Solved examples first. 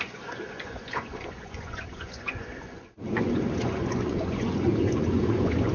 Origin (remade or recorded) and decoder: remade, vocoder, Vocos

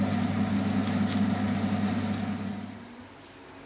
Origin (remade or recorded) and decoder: recorded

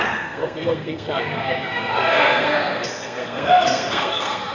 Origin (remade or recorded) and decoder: remade, codec, SNAC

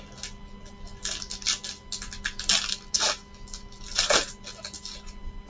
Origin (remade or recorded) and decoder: recorded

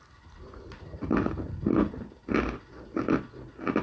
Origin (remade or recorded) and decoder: recorded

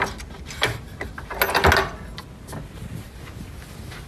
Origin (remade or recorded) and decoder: recorded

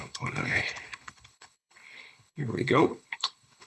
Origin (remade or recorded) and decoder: remade, codec, HILCodec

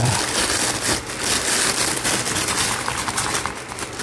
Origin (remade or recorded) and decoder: remade, vocoder, BigVGAN v2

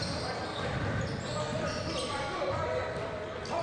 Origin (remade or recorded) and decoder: recorded